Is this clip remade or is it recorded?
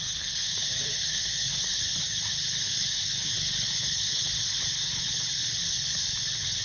remade